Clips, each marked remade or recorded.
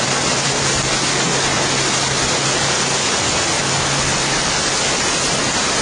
recorded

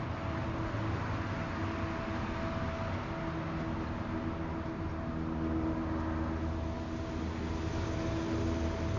recorded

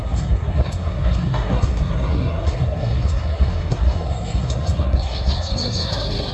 remade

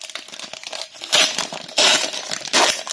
remade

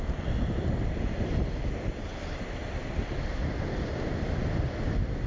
recorded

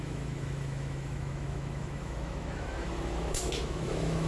remade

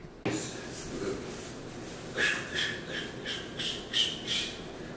recorded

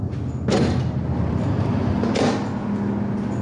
recorded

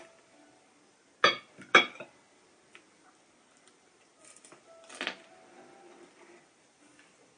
recorded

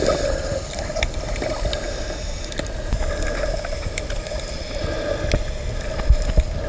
recorded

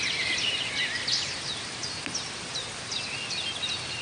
recorded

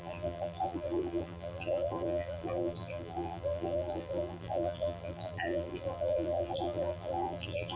remade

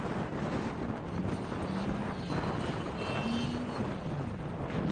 recorded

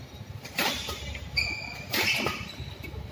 recorded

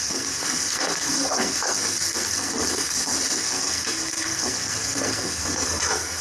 remade